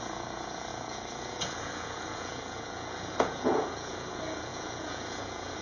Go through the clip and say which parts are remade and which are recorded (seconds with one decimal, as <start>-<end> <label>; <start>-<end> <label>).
0.0-5.6 remade